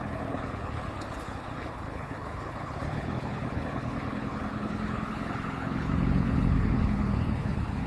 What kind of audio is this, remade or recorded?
remade